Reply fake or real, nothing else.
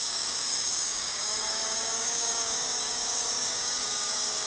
fake